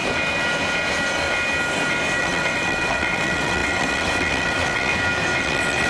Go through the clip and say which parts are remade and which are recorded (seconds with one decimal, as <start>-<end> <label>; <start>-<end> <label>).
0.0-2.2 recorded; 2.2-4.9 remade; 4.9-5.4 recorded; 5.4-5.9 remade